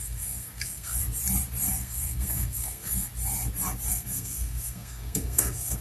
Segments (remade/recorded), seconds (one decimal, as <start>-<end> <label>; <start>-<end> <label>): 0.0-1.0 remade; 1.0-1.7 recorded; 1.7-3.1 remade; 3.1-3.9 recorded; 3.9-5.8 remade